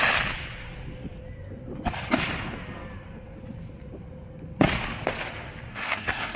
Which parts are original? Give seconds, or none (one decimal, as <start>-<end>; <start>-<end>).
0.0-5.7